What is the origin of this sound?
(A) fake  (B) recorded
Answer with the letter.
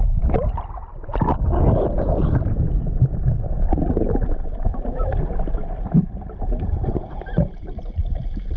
B